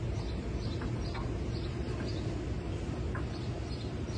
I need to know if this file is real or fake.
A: real